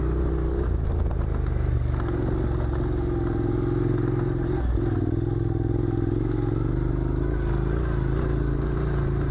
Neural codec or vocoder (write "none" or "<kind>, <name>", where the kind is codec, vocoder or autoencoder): none